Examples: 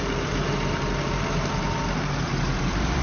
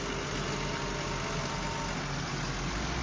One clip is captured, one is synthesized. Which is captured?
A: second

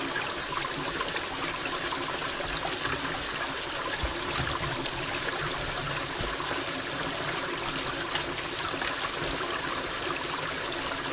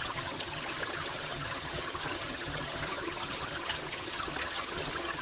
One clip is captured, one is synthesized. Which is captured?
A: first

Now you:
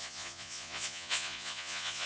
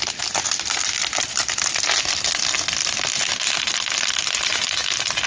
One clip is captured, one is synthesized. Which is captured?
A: second